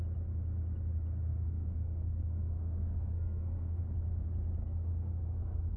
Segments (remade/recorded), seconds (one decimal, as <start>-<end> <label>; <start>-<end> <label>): 0.0-1.3 recorded; 1.3-3.8 remade; 3.8-4.6 recorded; 4.6-5.8 remade

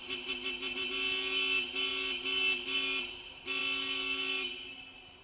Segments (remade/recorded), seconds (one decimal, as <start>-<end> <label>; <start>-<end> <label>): 0.0-5.2 recorded

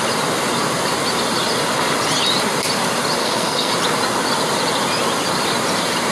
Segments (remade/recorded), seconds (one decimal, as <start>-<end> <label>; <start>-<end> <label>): 0.0-3.2 recorded; 3.2-3.7 remade; 3.7-6.1 recorded

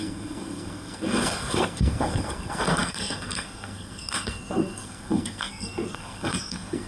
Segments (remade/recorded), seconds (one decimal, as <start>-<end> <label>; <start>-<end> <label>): 0.0-6.9 remade

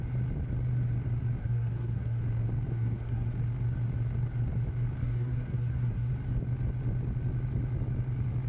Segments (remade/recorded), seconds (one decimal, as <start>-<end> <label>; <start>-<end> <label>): 0.0-1.4 recorded; 1.4-2.2 remade; 2.2-2.7 recorded; 2.7-3.3 remade; 3.3-5.0 recorded; 5.0-6.1 remade; 6.1-8.5 recorded

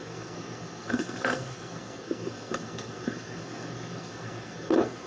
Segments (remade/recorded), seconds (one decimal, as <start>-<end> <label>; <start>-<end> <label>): 0.0-5.1 remade

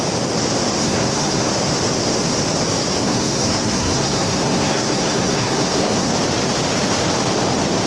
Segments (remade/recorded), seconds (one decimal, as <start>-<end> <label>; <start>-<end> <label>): 0.0-0.8 recorded; 0.8-1.5 remade; 1.5-3.0 recorded; 3.0-6.1 remade; 6.1-7.9 recorded